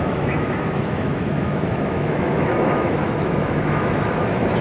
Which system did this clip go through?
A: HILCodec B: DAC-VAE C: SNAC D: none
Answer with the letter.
B